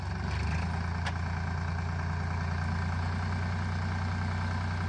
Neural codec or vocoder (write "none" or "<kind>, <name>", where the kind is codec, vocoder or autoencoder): none